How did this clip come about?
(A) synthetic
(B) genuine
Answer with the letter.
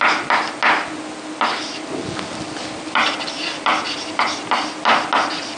B